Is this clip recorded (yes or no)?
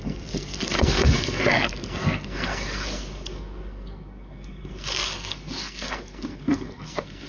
no